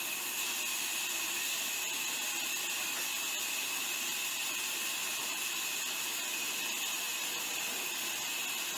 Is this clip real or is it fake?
real